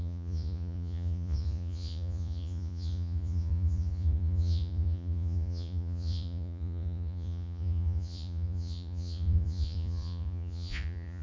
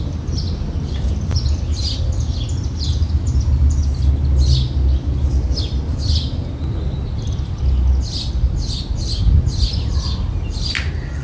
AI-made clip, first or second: first